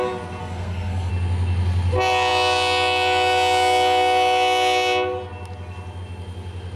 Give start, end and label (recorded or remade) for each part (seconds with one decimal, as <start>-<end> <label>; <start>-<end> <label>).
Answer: 0.0-0.4 recorded; 0.4-1.1 remade; 1.1-6.8 recorded